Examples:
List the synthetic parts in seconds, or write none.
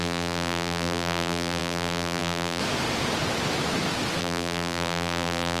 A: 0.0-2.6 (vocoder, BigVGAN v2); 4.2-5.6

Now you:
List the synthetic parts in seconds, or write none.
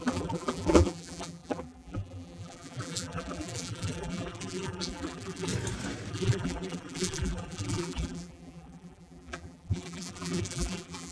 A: 0.0-5.5 (vocoder, BigVGAN v2); 6.1-11.1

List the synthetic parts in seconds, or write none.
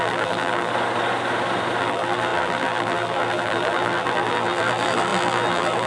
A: 0.0-0.7 (vocoder, BigVGAN v2); 1.8-5.9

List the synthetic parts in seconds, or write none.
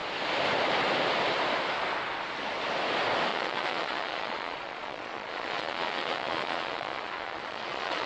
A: 3.3-8.1 (vocoder, Vocos)